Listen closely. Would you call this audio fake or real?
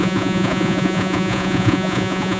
fake